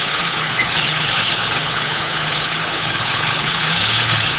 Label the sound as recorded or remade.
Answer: remade